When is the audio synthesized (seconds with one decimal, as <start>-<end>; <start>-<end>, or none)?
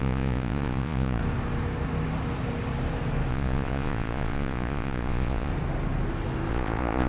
0.0-1.2; 3.3-5.5; 6.5-7.1